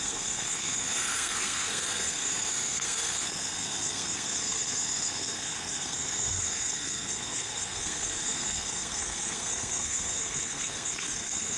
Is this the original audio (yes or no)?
no